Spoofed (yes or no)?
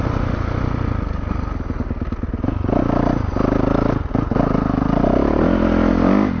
no